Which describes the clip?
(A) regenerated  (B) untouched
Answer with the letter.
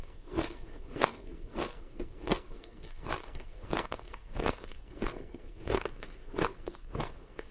A